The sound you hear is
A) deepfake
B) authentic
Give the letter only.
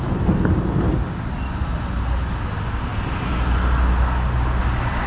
B